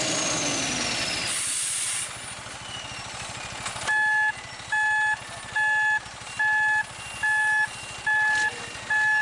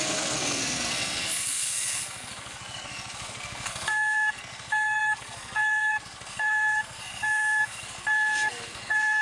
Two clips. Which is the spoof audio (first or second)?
second